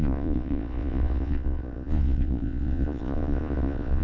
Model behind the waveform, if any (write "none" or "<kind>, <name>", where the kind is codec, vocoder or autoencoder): vocoder, Vocos